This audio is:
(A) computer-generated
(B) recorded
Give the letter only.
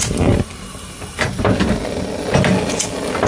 B